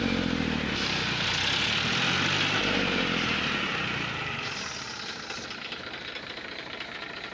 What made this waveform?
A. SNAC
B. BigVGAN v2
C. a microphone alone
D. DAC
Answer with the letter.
C